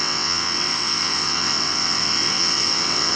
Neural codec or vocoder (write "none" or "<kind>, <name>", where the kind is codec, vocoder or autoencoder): vocoder, WaveNeXt